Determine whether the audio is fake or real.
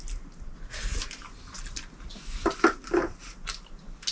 real